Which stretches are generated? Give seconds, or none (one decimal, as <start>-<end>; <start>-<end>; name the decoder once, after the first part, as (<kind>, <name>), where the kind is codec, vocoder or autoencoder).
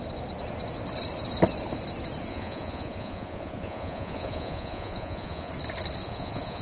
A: 2.3-5.5 (vocoder, Vocos); 6.0-6.6